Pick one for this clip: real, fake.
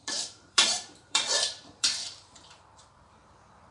fake